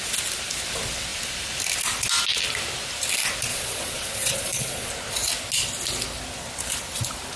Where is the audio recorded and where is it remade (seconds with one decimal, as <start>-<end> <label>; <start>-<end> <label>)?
0.0-3.5 recorded; 3.5-4.9 remade; 4.9-7.4 recorded